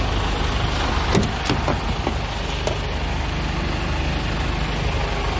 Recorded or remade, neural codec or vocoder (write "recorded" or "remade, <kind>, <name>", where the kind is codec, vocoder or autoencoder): recorded